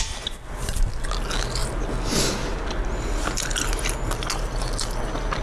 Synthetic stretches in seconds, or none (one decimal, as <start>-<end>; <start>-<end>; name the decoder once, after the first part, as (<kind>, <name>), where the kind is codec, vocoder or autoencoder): none